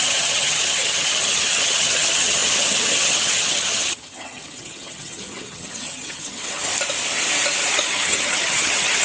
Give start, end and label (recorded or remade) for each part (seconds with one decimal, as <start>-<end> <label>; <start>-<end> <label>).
0.0-6.6 remade; 6.6-7.7 recorded; 7.7-9.0 remade